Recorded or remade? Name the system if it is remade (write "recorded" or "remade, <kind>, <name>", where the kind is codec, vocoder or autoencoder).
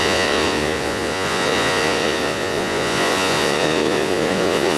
remade, vocoder, Vocos